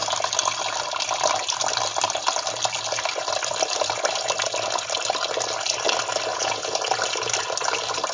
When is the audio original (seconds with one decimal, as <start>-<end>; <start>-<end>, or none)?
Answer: 0.0-6.3; 6.8-8.1